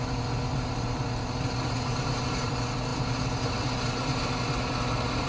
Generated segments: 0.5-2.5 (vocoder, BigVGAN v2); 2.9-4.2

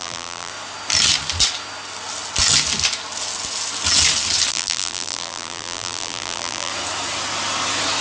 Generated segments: 0.0-0.5 (vocoder, BigVGAN v2); 4.5-6.7